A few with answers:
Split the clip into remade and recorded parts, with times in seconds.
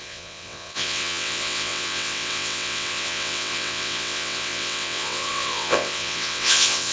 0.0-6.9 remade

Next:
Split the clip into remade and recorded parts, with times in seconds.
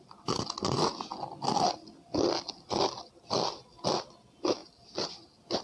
0.0-5.6 recorded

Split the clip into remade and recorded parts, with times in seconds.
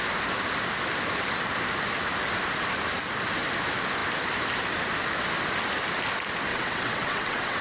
0.0-6.5 recorded; 6.5-7.6 remade